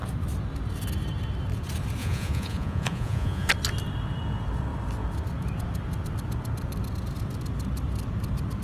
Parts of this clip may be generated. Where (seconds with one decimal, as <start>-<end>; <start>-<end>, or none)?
2.0-3.5